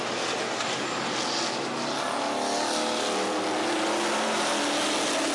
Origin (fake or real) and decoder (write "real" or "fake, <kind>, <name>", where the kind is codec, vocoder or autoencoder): real